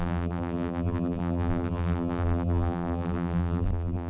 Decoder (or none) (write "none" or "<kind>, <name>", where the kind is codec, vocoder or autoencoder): vocoder, BigVGAN v2